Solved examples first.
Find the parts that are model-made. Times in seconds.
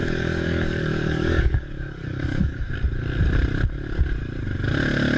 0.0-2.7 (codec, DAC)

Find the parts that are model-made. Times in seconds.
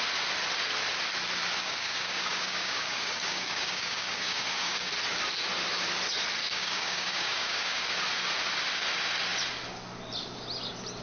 1.6-4.9 (codec, DAC); 6.4-7.9